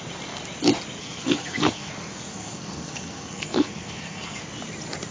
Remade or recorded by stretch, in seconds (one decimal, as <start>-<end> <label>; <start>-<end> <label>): 0.0-1.0 recorded; 1.0-1.9 remade; 1.9-2.3 recorded; 2.3-4.4 remade; 4.4-5.1 recorded